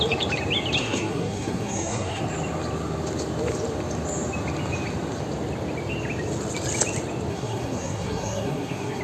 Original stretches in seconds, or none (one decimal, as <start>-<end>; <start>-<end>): 0.0-0.8; 2.2-7.3